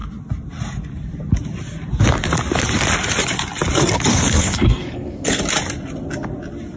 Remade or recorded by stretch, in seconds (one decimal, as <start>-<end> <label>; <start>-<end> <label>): 0.0-4.1 recorded; 4.1-5.4 remade; 5.4-6.8 recorded